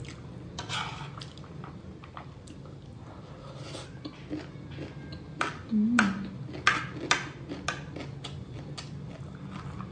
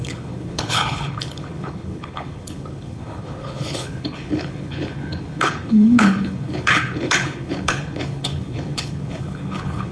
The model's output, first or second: second